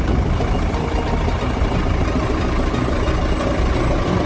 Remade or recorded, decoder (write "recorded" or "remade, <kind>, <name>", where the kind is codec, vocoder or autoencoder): recorded